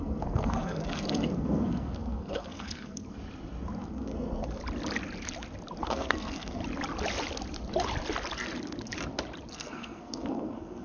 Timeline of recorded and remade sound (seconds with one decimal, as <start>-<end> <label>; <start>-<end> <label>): 0.0-3.2 remade; 3.2-3.8 recorded; 3.8-4.6 remade; 4.6-5.8 recorded; 5.8-6.6 remade; 6.6-9.5 recorded; 9.5-10.8 remade